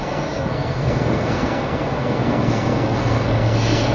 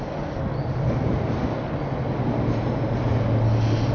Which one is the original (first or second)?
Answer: second